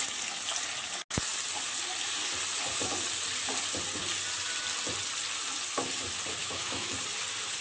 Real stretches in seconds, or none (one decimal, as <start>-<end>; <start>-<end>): 0.0-6.4; 6.9-7.6